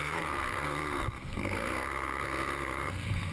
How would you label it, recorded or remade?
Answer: remade